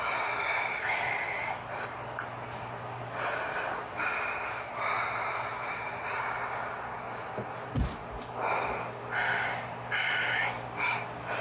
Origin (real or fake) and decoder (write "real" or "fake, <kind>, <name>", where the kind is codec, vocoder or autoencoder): real